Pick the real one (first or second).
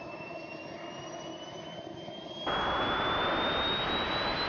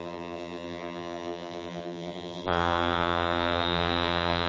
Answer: first